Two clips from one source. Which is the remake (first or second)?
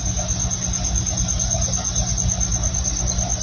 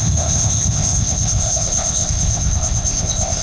second